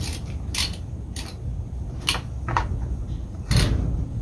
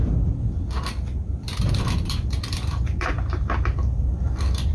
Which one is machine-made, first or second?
second